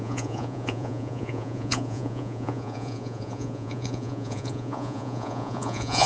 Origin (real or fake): fake